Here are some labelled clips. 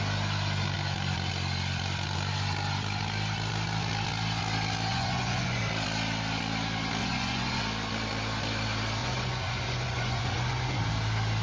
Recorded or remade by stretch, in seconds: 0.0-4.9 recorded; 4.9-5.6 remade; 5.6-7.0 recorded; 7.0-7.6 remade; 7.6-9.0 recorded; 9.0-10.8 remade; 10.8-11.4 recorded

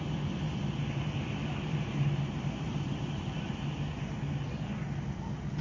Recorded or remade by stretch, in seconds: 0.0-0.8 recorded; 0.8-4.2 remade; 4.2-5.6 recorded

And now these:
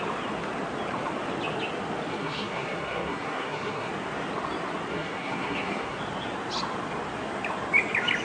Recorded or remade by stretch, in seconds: 0.0-2.1 recorded; 2.1-3.9 remade; 3.9-4.9 recorded; 4.9-6.0 remade; 6.0-8.2 recorded

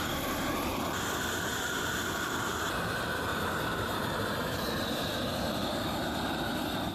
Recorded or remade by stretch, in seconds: 0.0-3.3 recorded; 3.3-6.4 remade; 6.4-6.9 recorded

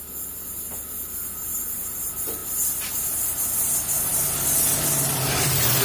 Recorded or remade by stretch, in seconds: 0.0-5.8 recorded